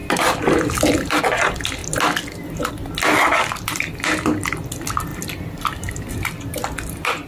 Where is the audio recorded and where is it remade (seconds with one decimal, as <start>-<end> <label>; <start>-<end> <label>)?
0.0-1.2 remade; 1.2-7.3 recorded